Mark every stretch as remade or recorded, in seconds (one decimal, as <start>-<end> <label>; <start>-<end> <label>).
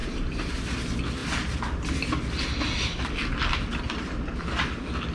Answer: 0.0-0.5 remade; 0.5-5.1 recorded